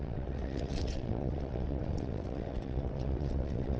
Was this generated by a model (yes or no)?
yes